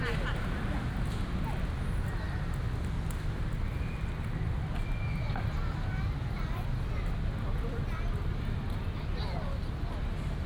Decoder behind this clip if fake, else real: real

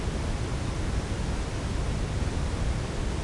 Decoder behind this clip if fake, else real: real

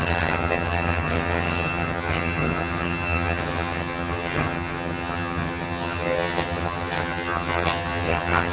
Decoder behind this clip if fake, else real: fake, vocoder, HiFi-GAN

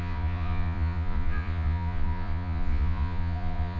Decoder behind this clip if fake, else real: fake, vocoder, Vocos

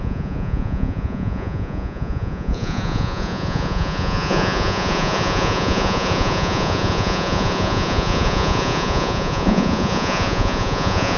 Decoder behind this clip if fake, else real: fake, vocoder, Vocos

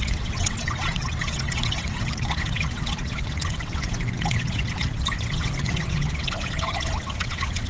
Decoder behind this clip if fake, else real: fake, vocoder, WaveNeXt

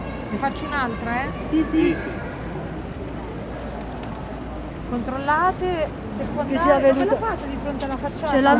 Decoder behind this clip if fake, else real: real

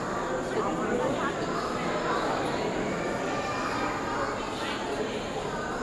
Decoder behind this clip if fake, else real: real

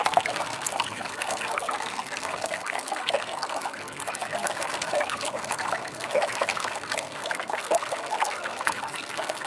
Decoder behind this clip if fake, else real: fake, codec, SNAC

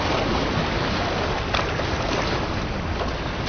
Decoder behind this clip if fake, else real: real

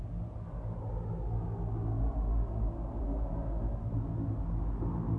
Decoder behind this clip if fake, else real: real